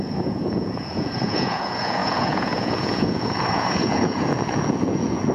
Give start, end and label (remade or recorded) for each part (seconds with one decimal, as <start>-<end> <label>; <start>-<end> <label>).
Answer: 0.0-5.3 remade

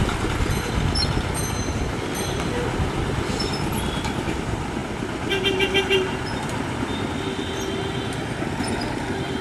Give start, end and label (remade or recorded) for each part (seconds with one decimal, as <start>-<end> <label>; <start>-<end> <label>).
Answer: 0.0-9.4 recorded

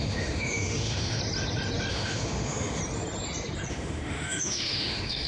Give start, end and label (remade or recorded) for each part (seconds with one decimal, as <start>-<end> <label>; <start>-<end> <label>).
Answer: 0.0-1.2 remade; 1.2-1.9 recorded; 1.9-2.8 remade; 2.8-3.7 recorded; 3.7-5.3 remade

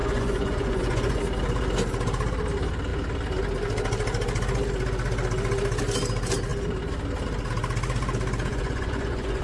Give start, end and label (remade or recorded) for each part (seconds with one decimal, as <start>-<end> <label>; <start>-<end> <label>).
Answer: 0.0-1.2 remade; 1.2-8.5 recorded; 8.5-9.4 remade